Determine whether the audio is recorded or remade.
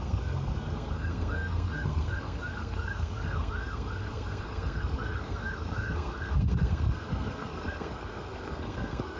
remade